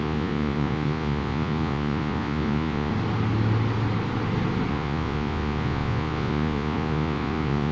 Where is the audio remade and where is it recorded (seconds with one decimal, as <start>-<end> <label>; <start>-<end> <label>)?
0.0-2.9 remade; 2.9-4.7 recorded; 4.7-7.7 remade